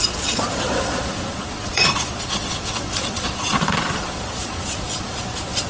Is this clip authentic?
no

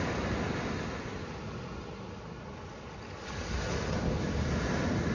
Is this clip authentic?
yes